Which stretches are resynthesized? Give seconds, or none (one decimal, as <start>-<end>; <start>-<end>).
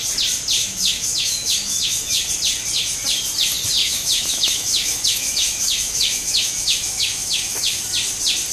0.6-2.3; 3.8-7.8